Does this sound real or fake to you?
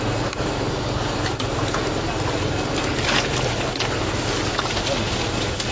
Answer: real